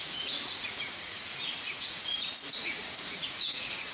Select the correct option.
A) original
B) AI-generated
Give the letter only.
B